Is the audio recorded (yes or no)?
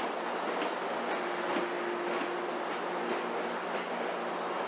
yes